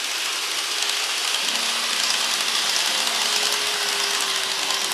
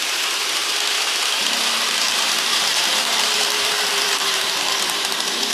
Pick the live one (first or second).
first